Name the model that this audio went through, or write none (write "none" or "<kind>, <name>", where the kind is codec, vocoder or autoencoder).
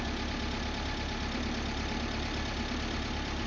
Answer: none